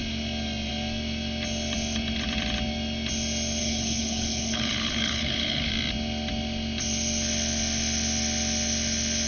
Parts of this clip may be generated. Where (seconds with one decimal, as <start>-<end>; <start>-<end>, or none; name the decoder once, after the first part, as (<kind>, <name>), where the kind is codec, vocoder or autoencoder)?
3.6-5.7 (codec, HILCodec)